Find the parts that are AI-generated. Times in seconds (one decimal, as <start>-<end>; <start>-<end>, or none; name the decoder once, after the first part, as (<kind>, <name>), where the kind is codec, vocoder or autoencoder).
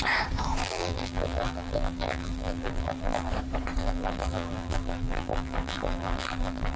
0.6-3.3 (vocoder, BigVGAN v2); 3.8-6.8